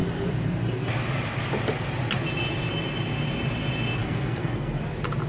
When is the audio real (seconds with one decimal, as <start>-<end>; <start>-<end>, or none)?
0.0-4.0; 4.8-5.3